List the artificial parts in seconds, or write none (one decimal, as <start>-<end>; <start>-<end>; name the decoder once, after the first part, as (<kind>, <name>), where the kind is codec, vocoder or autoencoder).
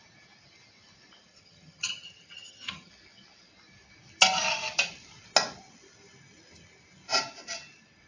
1.3-2.9 (vocoder, HiFi-GAN)